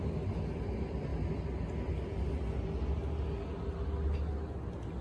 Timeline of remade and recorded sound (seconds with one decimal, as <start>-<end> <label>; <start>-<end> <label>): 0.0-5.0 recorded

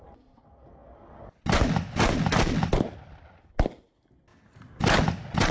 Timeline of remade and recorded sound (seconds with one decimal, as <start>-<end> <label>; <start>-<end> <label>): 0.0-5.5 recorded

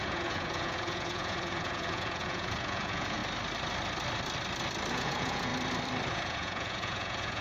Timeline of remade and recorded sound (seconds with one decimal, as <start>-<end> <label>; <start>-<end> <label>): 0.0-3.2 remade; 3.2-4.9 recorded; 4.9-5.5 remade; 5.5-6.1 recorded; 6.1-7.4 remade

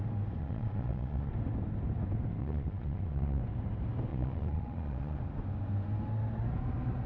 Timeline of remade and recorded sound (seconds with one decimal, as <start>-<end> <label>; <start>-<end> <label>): 0.0-0.4 recorded; 0.4-1.3 remade; 1.3-2.4 recorded; 2.4-3.4 remade; 3.4-4.1 recorded; 4.1-5.2 remade; 5.2-7.1 recorded

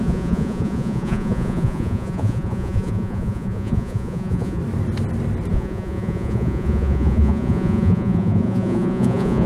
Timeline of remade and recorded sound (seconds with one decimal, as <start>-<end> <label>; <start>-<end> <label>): 0.0-4.6 remade; 4.6-5.5 recorded; 5.5-9.5 remade